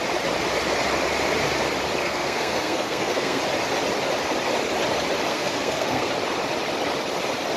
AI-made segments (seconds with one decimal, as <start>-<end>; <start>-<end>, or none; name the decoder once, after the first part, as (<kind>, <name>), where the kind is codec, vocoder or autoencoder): 2.0-3.4 (codec, SNAC); 5.3-6.1